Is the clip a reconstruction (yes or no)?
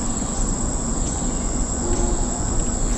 yes